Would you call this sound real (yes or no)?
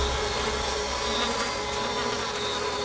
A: yes